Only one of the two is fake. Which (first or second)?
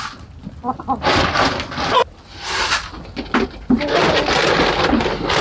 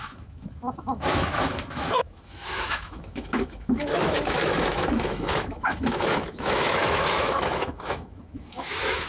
second